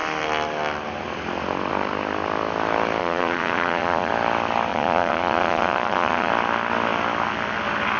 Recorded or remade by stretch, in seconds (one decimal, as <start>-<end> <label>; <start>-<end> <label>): 0.0-3.0 recorded; 3.0-4.1 remade; 4.1-4.7 recorded; 4.7-6.3 remade; 6.3-8.0 recorded